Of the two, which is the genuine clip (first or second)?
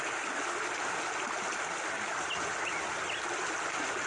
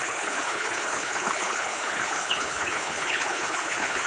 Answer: first